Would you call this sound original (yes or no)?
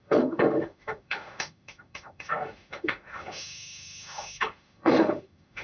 no